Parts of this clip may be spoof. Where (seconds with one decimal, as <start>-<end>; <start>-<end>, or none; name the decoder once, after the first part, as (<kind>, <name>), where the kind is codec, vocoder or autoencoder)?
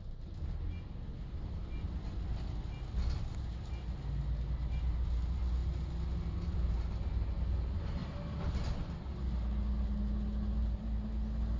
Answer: none